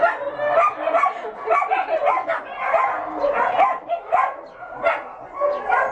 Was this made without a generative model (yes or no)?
yes